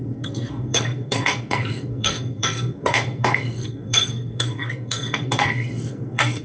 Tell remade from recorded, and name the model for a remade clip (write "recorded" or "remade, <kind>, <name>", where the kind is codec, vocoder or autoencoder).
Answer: remade, codec, SNAC